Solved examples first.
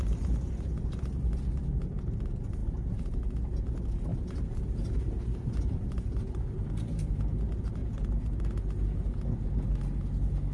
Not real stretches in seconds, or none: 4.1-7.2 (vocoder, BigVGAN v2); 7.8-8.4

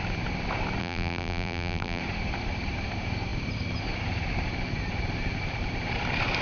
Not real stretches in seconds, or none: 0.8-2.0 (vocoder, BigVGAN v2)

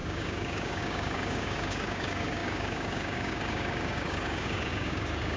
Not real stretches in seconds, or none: 0.0-5.4 (codec, DAC)

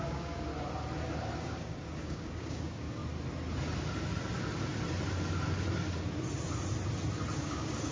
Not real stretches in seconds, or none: 0.0-0.5 (codec, DAC); 1.4-3.0; 7.4-7.9

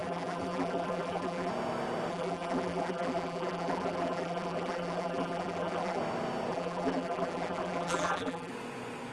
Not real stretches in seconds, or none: 0.0-1.5 (vocoder, BigVGAN v2); 2.1-6.0; 6.5-8.5

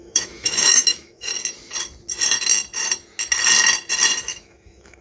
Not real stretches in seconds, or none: 0.0-1.3 (autoencoder, DAC-VAE); 4.2-5.0